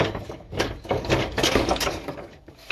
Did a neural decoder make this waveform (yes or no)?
yes